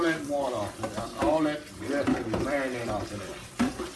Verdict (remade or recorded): remade